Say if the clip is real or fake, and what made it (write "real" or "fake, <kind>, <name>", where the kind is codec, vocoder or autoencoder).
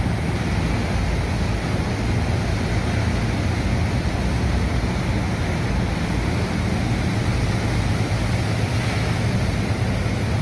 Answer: real